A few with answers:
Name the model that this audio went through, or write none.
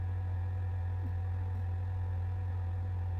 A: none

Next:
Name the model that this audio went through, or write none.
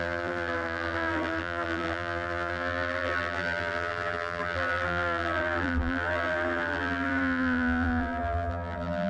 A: vocoder, BigVGAN v2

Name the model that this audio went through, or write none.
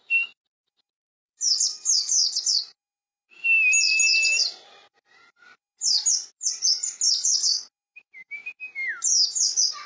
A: none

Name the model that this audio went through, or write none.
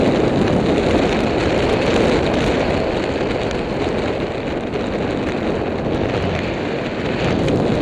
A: none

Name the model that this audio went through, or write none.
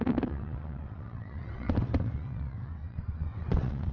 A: vocoder, WaveNeXt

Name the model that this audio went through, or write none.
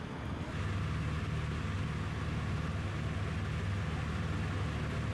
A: none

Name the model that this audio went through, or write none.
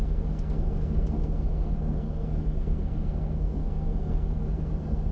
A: codec, SNAC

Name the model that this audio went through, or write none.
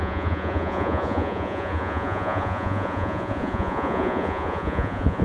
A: vocoder, Vocos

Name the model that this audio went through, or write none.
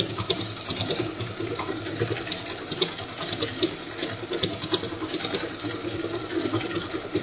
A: vocoder, BigVGAN v2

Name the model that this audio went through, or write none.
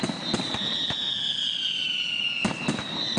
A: none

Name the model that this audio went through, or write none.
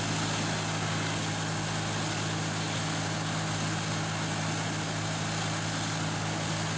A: none